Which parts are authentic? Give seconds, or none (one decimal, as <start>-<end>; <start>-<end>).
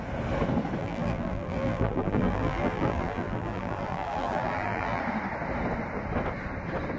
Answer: 0.0-0.8; 5.0-7.0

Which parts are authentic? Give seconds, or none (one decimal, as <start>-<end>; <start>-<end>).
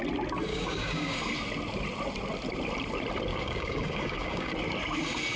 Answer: 0.0-0.5; 1.2-3.3; 4.5-5.4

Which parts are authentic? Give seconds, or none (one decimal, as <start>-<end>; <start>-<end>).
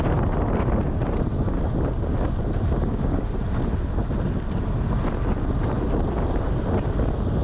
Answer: 0.0-2.9; 3.4-7.4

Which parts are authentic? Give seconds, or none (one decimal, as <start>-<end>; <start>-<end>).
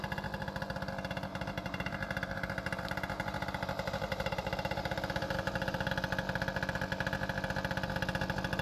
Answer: 0.0-1.3; 5.9-8.6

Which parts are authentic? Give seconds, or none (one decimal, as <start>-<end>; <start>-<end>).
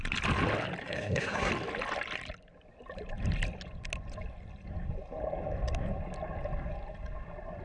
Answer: 0.0-0.8; 1.5-7.6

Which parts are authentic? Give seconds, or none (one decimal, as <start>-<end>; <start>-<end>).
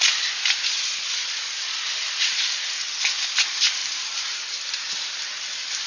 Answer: 0.0-3.8; 4.9-5.9